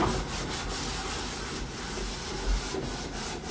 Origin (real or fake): real